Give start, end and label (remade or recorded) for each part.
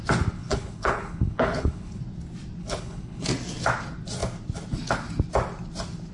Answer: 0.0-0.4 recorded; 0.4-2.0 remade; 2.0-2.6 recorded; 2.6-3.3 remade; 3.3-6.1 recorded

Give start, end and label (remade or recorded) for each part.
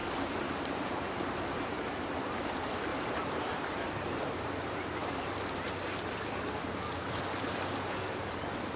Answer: 0.0-2.4 remade; 2.4-2.9 recorded; 2.9-5.3 remade; 5.3-8.8 recorded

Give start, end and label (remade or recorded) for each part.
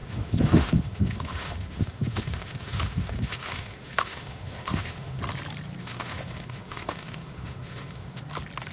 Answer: 0.0-5.2 remade; 5.2-5.8 recorded; 5.8-8.2 remade; 8.2-8.7 recorded